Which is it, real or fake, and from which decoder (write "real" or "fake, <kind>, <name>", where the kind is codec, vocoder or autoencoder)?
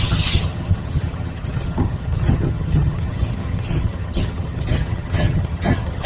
fake, vocoder, HiFi-GAN